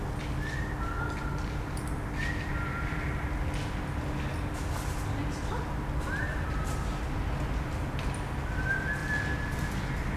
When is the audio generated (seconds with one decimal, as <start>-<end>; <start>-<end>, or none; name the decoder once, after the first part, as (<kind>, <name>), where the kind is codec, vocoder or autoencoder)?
none